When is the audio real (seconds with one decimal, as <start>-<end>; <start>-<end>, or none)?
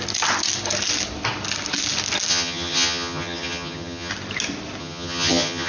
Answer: 0.0-2.3; 4.1-4.8